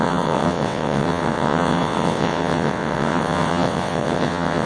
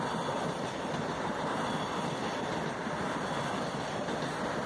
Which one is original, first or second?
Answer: second